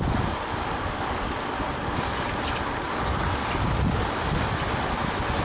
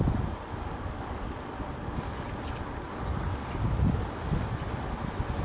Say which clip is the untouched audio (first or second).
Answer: second